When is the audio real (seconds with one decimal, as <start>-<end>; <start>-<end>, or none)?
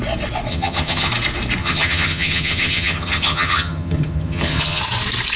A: 0.0-0.5; 1.1-1.6; 4.8-5.4